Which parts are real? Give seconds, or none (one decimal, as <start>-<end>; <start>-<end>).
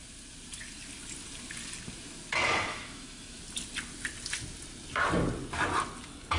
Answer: 0.0-2.7; 3.4-6.4